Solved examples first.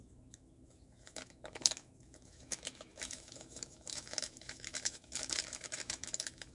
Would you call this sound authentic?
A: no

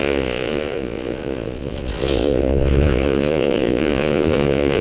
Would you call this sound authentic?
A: no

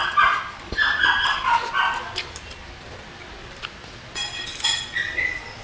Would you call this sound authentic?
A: yes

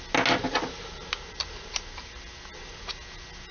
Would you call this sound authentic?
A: yes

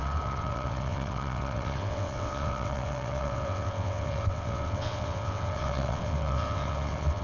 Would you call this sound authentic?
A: no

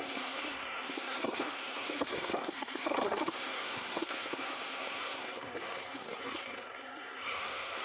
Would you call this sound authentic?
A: no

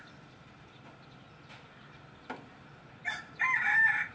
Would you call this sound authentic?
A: no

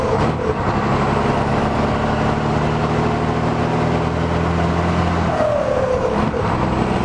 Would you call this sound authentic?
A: yes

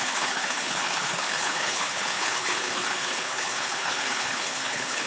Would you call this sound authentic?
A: no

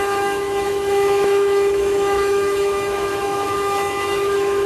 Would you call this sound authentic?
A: no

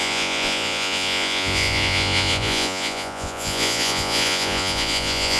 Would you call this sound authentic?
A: no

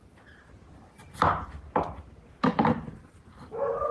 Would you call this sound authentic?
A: yes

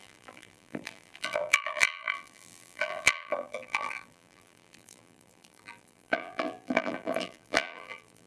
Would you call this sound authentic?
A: no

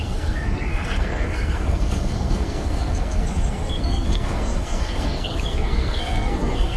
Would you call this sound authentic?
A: no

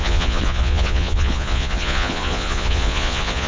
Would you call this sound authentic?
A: no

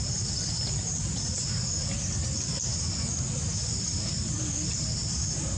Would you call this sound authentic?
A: yes